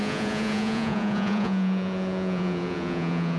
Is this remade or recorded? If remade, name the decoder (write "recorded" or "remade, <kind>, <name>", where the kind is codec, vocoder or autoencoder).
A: remade, vocoder, Vocos